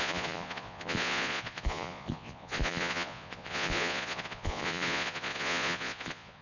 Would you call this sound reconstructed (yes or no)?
yes